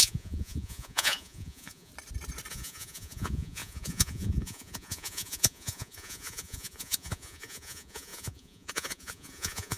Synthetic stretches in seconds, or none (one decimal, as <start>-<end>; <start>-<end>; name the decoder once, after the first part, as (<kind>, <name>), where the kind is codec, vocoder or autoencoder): 0.0-1.9 (vocoder, Vocos); 2.5-9.8

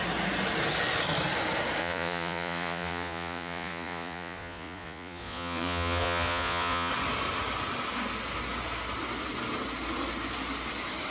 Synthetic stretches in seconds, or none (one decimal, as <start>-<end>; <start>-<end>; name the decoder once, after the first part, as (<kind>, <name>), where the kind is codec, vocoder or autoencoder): 1.8-6.9 (vocoder, Vocos)

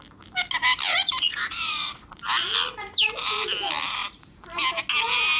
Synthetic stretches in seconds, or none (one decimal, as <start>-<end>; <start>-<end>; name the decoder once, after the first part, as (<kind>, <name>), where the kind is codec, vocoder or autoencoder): 0.9-2.2 (vocoder, Vocos)

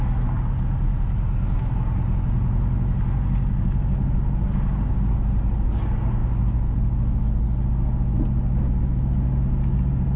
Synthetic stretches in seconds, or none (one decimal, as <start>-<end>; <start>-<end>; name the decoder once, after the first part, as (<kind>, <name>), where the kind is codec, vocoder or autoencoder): none

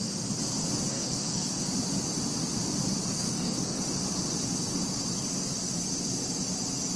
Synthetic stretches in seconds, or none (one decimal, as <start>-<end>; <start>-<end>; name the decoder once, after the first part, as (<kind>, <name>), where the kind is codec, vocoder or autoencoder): 0.9-1.6 (codec, SNAC); 3.1-3.8

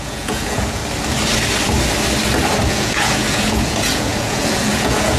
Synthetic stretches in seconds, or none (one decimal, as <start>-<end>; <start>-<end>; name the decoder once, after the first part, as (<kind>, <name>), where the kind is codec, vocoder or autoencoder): 0.0-0.8 (vocoder, Vocos); 2.7-5.2

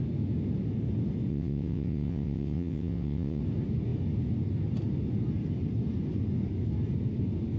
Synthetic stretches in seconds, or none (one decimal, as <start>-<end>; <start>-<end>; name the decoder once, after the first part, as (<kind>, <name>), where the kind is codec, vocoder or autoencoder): 1.3-3.4 (vocoder, WaveNeXt)